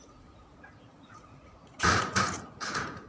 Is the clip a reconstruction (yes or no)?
yes